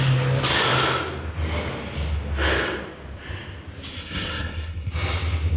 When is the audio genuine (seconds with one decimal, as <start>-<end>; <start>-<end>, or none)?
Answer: 0.0-3.9; 4.9-5.6